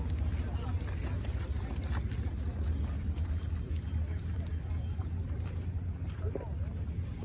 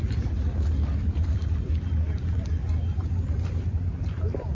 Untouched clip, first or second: first